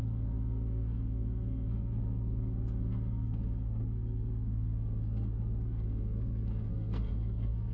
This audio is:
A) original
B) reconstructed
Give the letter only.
B